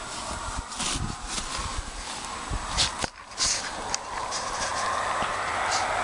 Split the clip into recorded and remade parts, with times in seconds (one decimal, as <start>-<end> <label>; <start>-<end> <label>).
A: 0.0-4.7 remade; 4.7-6.0 recorded